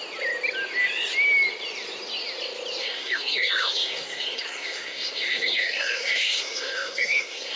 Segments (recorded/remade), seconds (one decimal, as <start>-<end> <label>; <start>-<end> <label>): 0.0-2.8 recorded; 2.8-7.6 remade